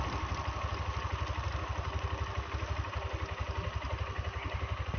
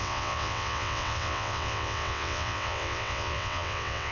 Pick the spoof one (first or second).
second